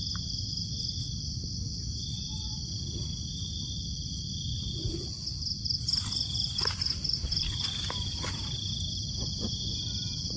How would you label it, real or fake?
fake